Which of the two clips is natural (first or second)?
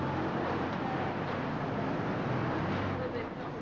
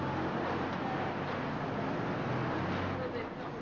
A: second